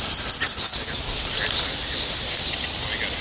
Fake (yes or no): no